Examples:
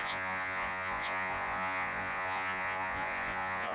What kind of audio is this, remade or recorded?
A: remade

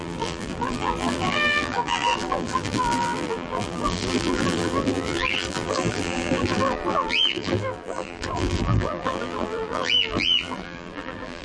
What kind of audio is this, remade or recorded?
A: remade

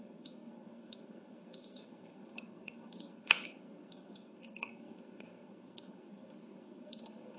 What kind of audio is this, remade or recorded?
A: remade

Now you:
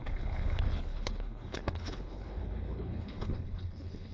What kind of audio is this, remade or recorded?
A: remade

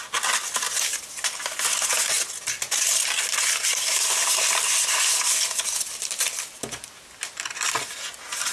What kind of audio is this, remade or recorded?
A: recorded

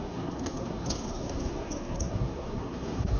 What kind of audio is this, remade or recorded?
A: remade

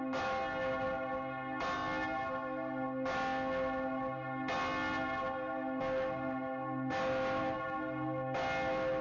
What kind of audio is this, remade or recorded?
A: recorded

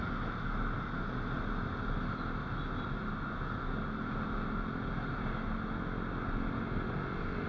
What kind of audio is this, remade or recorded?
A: recorded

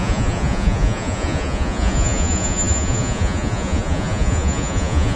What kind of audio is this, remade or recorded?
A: remade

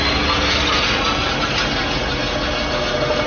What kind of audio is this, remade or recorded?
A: recorded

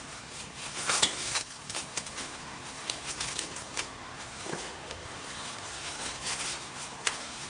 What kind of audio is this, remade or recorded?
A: remade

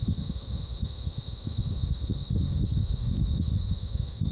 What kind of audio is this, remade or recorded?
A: remade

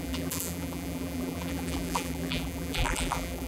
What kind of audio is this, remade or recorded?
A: remade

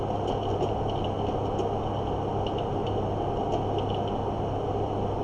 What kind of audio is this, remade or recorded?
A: recorded